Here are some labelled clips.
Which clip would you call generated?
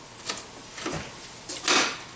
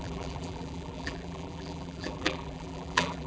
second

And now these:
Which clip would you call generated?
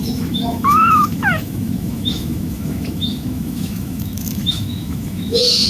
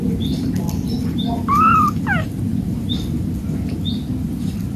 first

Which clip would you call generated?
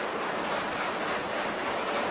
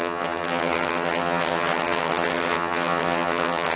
second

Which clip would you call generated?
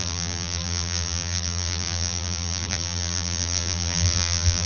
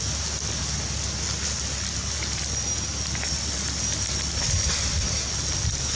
first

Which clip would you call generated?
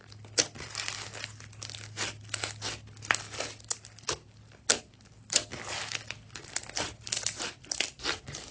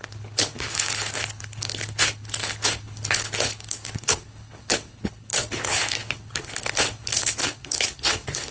second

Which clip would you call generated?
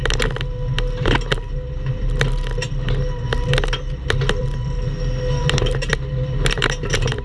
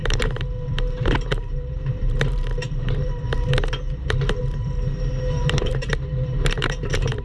second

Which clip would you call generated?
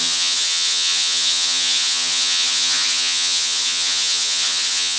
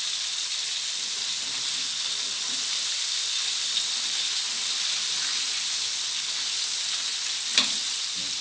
first